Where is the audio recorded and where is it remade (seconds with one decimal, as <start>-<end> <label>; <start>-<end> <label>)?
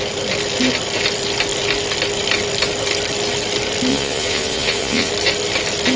0.0-3.9 recorded; 3.9-5.1 remade; 5.1-6.0 recorded